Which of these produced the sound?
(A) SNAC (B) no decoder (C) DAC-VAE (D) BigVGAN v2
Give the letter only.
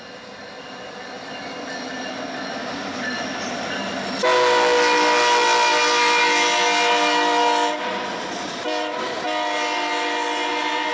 B